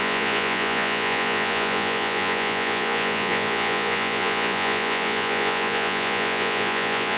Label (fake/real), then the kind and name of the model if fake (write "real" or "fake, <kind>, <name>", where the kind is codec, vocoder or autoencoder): fake, vocoder, Vocos